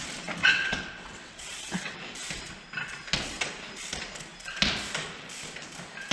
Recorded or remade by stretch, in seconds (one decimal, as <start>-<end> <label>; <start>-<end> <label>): 0.0-0.4 recorded; 0.4-2.0 remade; 2.0-6.1 recorded